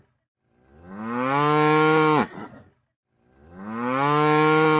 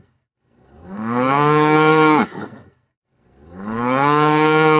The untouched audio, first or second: first